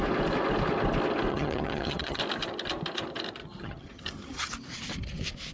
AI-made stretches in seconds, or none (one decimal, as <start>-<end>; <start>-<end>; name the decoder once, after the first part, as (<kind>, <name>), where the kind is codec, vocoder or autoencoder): 1.3-2.2 (vocoder, HiFi-GAN); 3.4-4.5